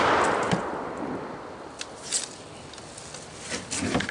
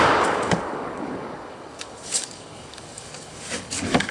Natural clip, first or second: first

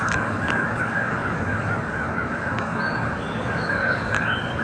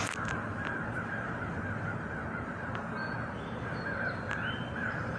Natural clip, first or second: second